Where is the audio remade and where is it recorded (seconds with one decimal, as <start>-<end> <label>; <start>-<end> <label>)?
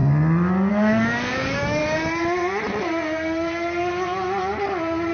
0.0-0.7 recorded; 0.7-1.8 remade; 1.8-5.1 recorded